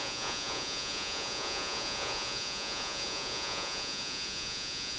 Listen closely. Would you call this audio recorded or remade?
remade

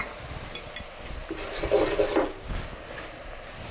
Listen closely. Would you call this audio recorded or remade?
recorded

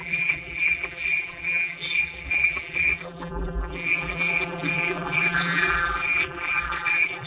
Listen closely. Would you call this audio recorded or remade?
remade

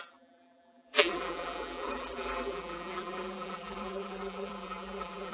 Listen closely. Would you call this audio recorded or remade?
remade